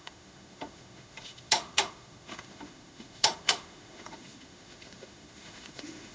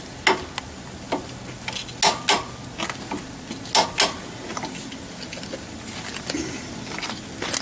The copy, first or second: first